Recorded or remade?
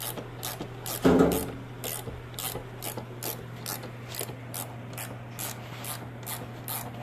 recorded